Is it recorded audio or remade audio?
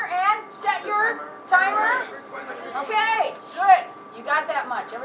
recorded